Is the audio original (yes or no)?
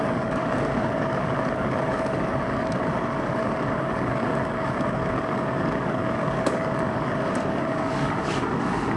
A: no